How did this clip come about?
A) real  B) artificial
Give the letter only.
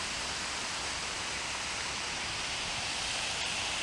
A